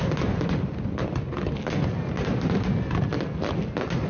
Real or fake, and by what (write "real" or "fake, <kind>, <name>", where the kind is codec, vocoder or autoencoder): real